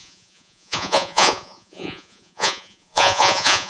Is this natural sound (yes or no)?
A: no